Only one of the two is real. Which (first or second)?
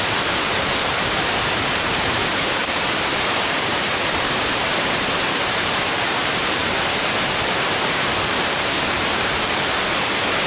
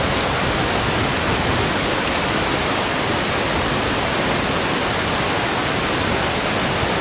second